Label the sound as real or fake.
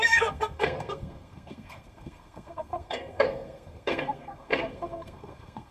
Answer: fake